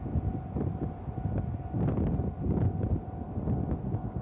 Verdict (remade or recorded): recorded